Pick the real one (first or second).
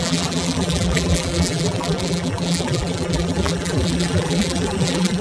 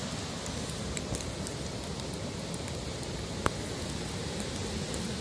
second